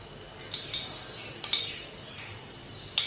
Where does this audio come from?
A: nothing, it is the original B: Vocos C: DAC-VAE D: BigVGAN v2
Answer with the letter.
D